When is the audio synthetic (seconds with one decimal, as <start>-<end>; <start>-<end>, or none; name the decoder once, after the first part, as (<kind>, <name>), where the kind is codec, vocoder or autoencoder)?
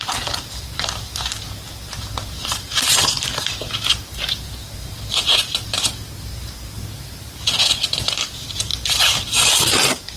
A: 0.0-10.2 (vocoder, BigVGAN v2)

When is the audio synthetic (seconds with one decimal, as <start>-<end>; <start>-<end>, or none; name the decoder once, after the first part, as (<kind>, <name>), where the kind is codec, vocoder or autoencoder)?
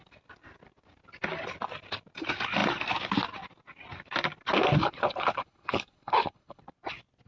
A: 4.8-6.6 (codec, HILCodec)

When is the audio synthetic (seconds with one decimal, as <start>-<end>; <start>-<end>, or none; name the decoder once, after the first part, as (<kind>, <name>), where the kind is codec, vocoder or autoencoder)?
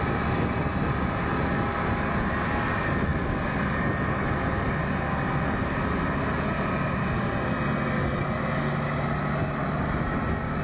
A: none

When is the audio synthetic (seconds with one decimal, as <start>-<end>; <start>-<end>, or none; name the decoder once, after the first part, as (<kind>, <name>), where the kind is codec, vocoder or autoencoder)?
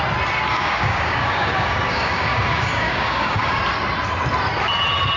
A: 0.5-3.6 (codec, DAC)